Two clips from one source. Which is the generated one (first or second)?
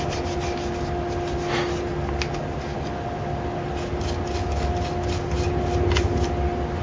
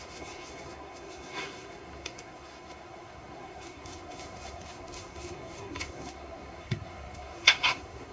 second